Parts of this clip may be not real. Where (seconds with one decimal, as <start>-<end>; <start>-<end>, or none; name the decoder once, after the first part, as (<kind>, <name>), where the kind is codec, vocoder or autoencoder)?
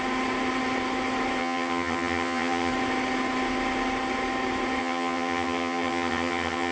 1.4-2.7 (vocoder, HiFi-GAN); 4.8-6.7